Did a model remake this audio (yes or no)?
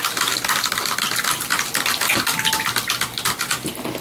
no